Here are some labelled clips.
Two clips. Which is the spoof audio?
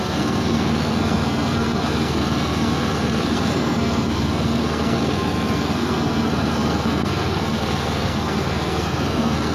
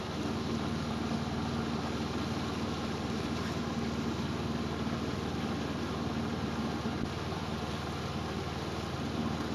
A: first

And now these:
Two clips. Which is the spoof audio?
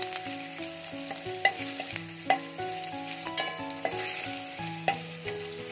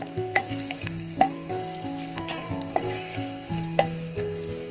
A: second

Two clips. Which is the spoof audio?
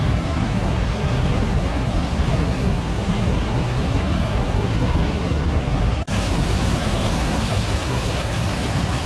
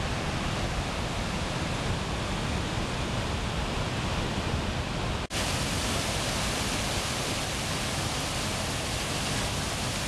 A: first